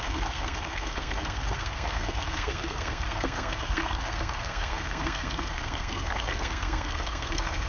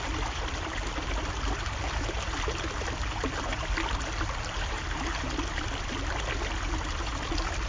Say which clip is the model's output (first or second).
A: first